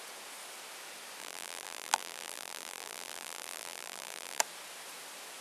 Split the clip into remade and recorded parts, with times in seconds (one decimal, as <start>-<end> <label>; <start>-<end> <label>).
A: 0.0-1.2 recorded; 1.2-4.4 remade; 4.4-5.4 recorded

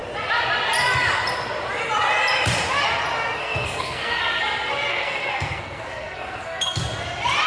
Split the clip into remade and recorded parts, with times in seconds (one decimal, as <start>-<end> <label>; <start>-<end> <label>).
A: 0.0-3.4 recorded; 3.4-4.4 remade; 4.4-4.9 recorded; 4.9-6.8 remade; 6.8-7.5 recorded